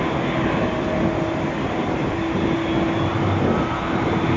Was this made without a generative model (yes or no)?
yes